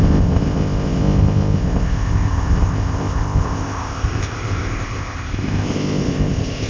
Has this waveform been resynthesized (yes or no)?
yes